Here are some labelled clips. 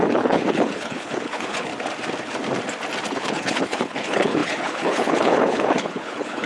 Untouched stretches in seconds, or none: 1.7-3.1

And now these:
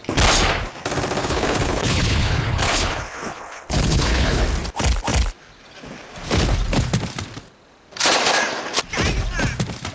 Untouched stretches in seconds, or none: 0.0-1.2; 4.4-9.9

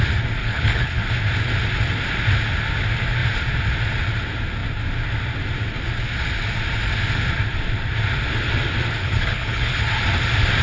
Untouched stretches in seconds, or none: 0.0-0.4; 1.0-9.0; 9.7-10.6

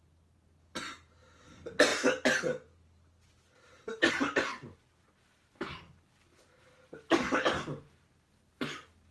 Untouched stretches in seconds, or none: 0.0-9.1

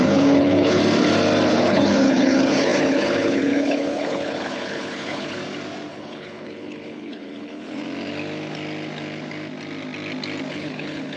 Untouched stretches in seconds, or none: 0.8-1.5; 5.4-5.9; 7.8-10.5

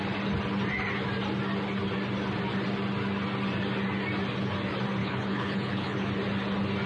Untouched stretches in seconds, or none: 0.0-5.0; 6.1-6.9

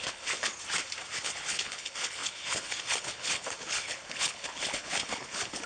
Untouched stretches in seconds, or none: 0.5-1.1

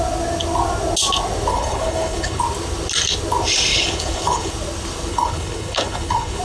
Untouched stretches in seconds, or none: 0.0-1.5; 2.4-3.7; 4.5-5.1